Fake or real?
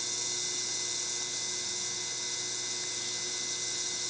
real